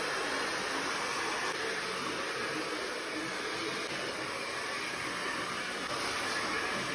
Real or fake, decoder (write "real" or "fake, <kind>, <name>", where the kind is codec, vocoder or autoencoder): real